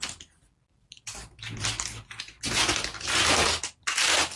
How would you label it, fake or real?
real